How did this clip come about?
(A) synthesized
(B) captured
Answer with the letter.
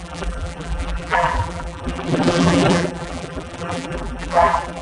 A